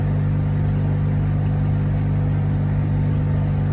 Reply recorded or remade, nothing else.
recorded